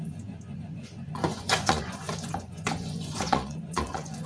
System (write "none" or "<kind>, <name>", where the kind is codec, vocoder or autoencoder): vocoder, Vocos